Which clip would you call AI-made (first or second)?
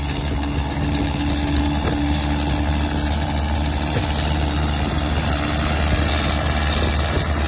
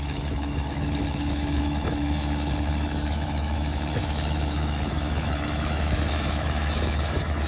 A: second